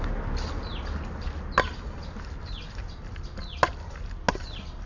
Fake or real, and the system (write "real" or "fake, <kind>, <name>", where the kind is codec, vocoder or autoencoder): real